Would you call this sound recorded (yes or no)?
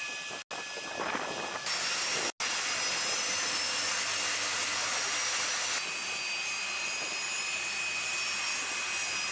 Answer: yes